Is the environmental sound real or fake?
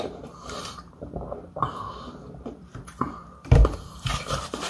fake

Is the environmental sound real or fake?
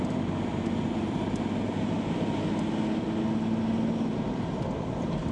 real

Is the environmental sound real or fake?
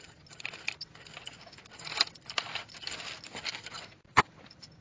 real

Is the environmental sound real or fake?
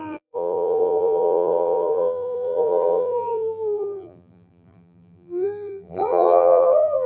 fake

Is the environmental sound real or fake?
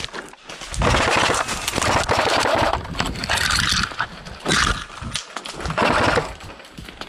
real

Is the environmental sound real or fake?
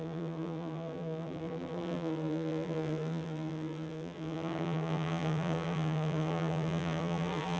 fake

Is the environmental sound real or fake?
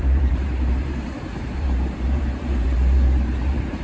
fake